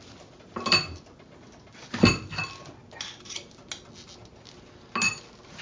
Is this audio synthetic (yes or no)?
no